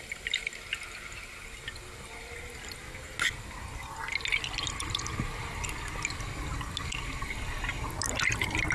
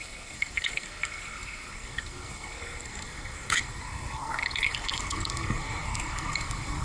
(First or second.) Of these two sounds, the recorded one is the first